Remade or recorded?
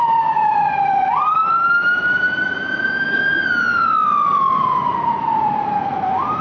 recorded